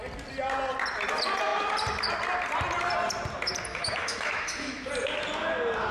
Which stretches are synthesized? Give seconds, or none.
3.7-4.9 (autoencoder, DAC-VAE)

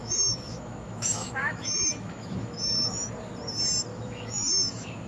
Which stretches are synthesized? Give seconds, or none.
0.0-3.1 (autoencoder, DAC-VAE); 3.9-5.1

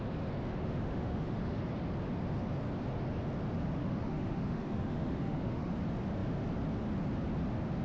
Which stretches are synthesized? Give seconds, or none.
0.5-1.6 (autoencoder, DAC-VAE); 3.8-5.7

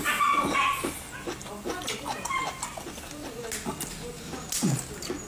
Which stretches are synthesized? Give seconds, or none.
none

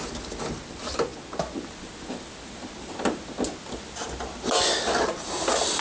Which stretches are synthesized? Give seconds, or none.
none

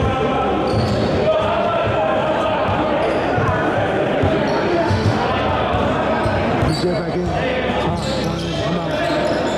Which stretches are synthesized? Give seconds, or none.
4.7-5.3 (autoencoder, DAC-VAE)

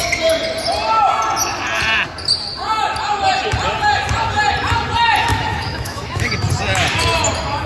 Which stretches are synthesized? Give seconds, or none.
5.3-6.3 (autoencoder, DAC-VAE)